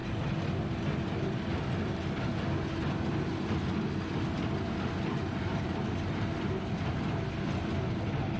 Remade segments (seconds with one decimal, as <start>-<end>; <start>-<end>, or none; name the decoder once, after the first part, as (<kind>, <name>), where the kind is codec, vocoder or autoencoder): none